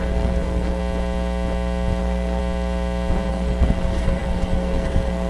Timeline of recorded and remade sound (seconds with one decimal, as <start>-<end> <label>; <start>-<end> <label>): 0.0-0.8 remade; 0.8-2.0 recorded; 2.0-2.4 remade; 2.4-3.3 recorded; 3.3-5.3 remade